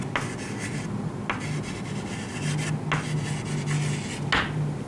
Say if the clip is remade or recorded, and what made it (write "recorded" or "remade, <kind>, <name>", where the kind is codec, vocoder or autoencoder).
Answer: recorded